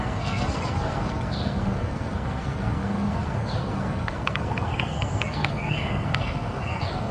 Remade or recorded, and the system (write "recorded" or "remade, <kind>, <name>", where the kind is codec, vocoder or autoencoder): remade, codec, SNAC